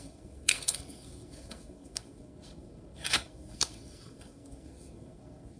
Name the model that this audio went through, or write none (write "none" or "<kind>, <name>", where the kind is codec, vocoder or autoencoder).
codec, SNAC